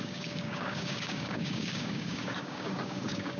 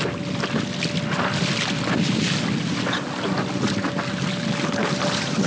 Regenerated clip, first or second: first